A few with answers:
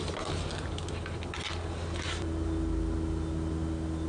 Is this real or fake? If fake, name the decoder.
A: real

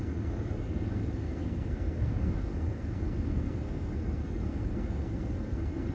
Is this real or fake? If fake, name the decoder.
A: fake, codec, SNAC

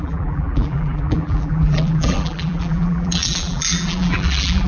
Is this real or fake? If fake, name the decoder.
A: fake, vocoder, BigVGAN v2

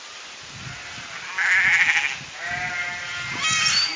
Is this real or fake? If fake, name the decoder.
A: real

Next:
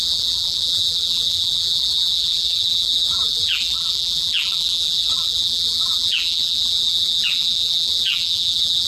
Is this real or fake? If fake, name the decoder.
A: fake, vocoder, BigVGAN v2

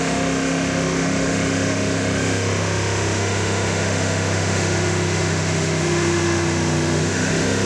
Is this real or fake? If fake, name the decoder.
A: fake, autoencoder, DAC-VAE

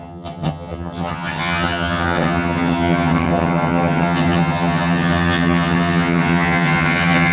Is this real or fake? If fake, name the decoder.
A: fake, vocoder, HiFi-GAN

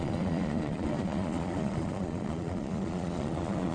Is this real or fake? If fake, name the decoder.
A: fake, vocoder, Vocos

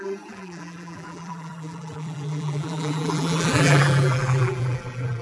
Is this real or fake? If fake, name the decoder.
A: fake, vocoder, BigVGAN v2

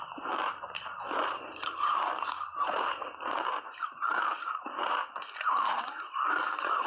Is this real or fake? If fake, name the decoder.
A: fake, vocoder, BigVGAN v2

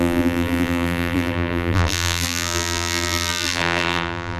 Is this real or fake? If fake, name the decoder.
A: fake, vocoder, BigVGAN v2